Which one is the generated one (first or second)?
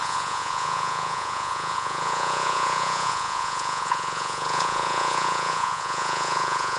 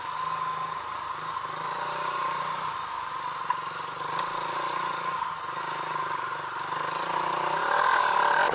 first